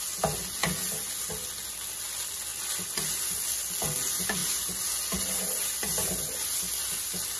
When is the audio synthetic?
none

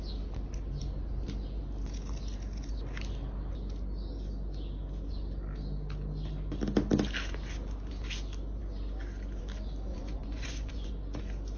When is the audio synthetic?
9.9-10.9 (vocoder, Vocos)

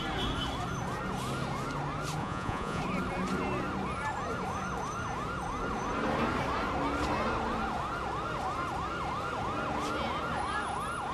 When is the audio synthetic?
2.2-2.8 (vocoder, Vocos)

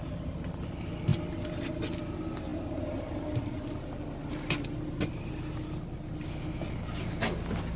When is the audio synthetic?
none

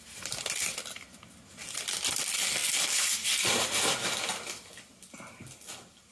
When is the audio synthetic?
none

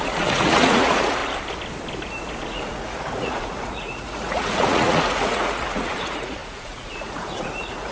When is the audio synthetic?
0.0-1.2 (vocoder, Vocos); 2.5-7.9